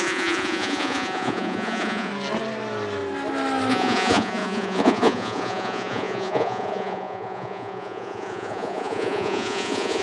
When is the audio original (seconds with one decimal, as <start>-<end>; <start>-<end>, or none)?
2.1-3.7